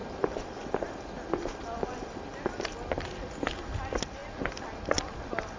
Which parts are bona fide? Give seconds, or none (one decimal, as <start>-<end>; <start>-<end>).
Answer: 0.0-5.6